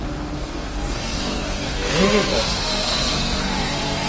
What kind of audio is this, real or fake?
fake